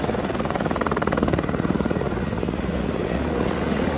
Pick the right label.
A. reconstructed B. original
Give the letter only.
A